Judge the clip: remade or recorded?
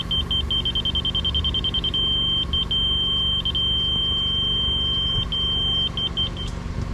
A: recorded